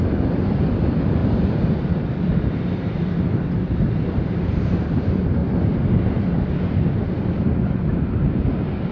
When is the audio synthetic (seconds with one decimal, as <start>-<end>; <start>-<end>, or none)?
0.0-5.4